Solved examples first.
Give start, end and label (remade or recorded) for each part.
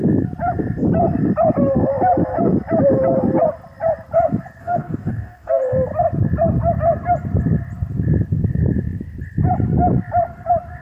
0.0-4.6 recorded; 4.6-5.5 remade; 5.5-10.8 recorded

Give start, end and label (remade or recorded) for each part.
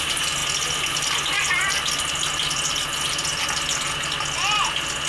0.0-5.1 recorded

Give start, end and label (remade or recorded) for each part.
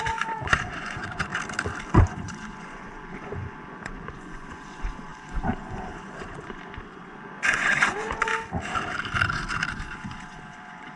0.0-1.3 remade; 1.3-2.0 recorded; 2.0-8.3 remade; 8.3-9.7 recorded; 9.7-11.0 remade